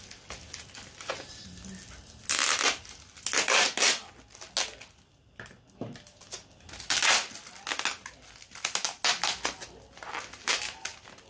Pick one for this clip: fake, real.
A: real